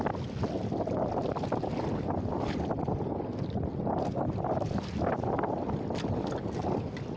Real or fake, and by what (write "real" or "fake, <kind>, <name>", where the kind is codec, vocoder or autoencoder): real